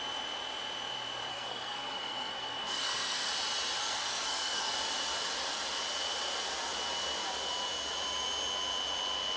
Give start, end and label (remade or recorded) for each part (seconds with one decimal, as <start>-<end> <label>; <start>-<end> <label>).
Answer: 0.0-1.3 recorded; 1.3-3.3 remade; 3.3-3.8 recorded; 3.8-4.7 remade; 4.7-9.4 recorded